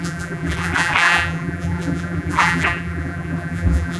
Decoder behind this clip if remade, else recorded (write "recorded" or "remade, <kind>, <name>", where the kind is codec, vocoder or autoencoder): remade, vocoder, BigVGAN v2